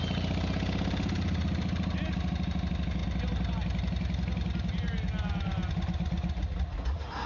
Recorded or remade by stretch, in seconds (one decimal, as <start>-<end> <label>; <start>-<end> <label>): 0.0-7.3 recorded